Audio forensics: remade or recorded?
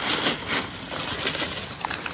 recorded